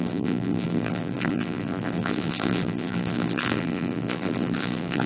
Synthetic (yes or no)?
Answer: yes